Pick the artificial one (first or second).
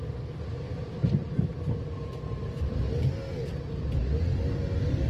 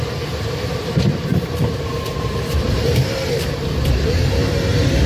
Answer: second